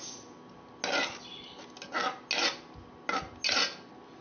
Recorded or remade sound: recorded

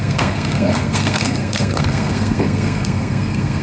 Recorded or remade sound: remade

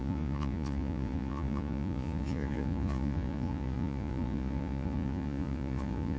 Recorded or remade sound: remade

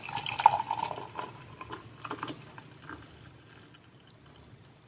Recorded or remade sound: recorded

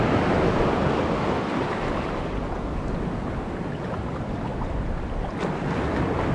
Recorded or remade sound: recorded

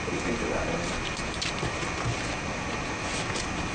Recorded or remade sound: recorded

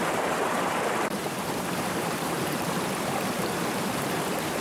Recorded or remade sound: remade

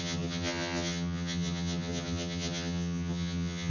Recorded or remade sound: remade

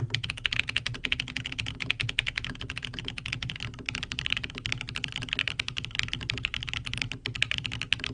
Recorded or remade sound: recorded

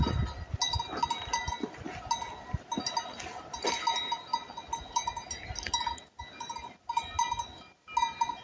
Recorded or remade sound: recorded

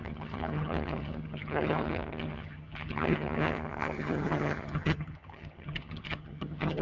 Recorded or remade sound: remade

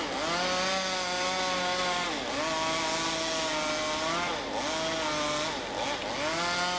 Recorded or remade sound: recorded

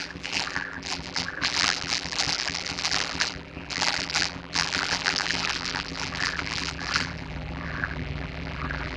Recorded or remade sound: remade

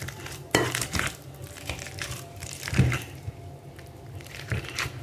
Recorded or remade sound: remade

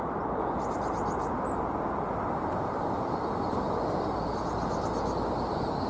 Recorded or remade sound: recorded